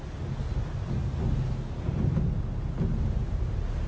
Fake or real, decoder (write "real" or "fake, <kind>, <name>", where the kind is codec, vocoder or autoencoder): real